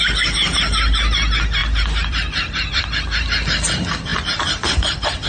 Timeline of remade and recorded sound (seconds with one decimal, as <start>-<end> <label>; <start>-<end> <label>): 0.0-1.6 recorded; 1.6-2.8 remade; 2.8-5.3 recorded